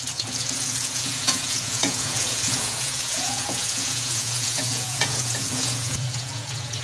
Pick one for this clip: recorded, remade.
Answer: remade